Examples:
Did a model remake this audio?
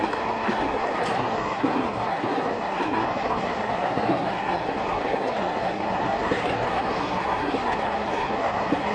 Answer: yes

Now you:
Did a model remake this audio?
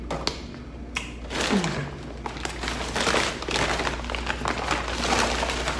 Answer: no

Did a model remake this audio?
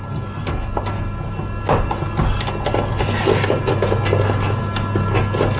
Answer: no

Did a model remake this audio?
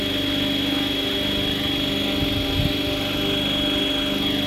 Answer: no